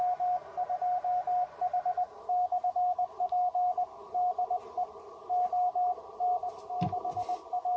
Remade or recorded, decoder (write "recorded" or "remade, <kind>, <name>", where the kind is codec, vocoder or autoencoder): recorded